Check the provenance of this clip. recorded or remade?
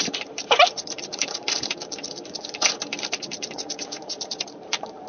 remade